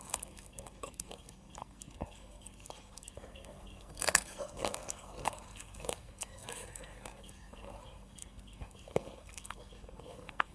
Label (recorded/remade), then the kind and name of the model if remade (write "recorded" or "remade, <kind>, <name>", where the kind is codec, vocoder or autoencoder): remade, codec, SNAC